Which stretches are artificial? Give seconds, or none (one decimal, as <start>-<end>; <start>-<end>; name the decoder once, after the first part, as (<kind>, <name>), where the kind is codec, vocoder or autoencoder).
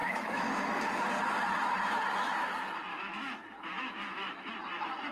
0.0-0.8 (autoencoder, DAC-VAE); 2.9-4.5